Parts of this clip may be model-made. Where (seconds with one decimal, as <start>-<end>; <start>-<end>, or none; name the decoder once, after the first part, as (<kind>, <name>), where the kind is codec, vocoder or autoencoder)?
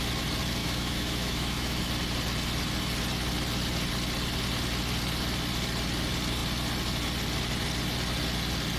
0.6-1.8 (autoencoder, DAC-VAE)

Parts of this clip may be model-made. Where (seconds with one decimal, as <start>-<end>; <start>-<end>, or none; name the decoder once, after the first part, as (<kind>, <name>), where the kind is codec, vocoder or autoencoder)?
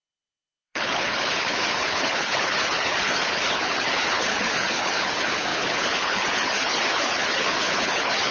0.0-8.3 (codec, HILCodec)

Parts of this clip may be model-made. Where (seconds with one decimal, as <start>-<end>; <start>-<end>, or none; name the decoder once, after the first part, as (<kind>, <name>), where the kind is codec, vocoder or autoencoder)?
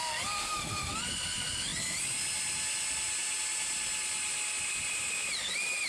0.4-0.9 (autoencoder, DAC-VAE)